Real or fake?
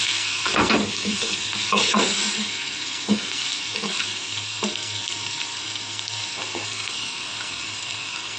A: fake